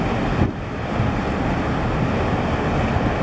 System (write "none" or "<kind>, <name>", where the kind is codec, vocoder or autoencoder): none